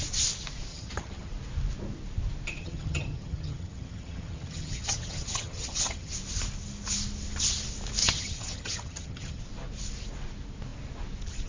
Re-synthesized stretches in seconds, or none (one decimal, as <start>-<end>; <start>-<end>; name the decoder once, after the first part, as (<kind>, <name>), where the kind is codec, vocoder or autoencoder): 0.7-1.3 (vocoder, HiFi-GAN); 2.6-6.1; 8.0-9.4